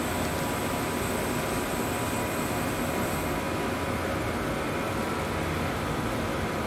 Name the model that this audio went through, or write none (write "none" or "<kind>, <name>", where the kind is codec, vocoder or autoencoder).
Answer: none